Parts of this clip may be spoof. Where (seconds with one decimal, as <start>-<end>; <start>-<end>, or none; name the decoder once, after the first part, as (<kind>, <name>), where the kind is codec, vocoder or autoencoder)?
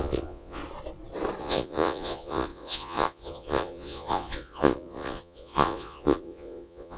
0.0-0.6 (vocoder, Vocos); 1.4-7.0